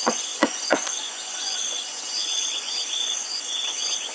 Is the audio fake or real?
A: fake